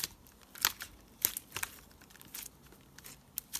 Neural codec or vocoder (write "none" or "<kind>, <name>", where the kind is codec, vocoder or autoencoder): none